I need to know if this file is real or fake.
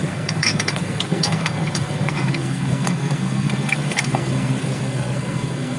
fake